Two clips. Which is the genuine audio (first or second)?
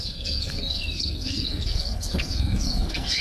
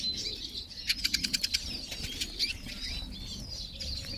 second